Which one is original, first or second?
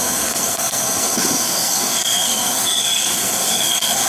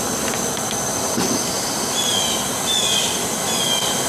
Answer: second